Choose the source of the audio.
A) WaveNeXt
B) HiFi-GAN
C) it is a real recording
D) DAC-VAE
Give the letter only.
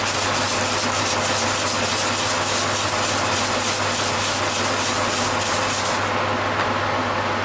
C